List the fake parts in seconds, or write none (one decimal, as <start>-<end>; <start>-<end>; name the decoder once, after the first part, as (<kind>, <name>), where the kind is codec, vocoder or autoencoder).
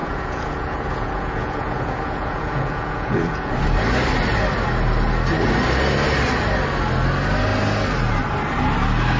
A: 0.0-3.5 (vocoder, Vocos)